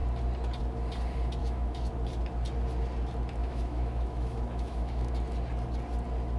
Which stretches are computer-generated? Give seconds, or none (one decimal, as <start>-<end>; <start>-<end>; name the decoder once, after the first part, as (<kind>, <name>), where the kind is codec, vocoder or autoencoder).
1.4-1.9 (autoencoder, DAC-VAE); 3.4-5.1